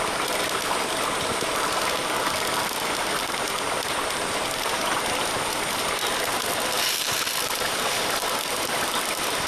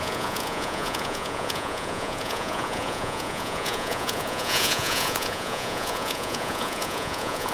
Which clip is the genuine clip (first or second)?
first